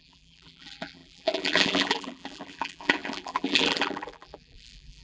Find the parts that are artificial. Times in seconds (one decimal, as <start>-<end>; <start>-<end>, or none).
0.0-5.0